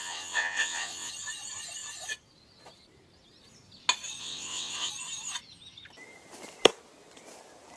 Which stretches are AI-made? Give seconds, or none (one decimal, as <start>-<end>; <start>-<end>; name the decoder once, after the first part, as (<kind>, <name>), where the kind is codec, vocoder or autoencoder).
0.0-1.1 (vocoder, WaveNeXt); 4.2-4.9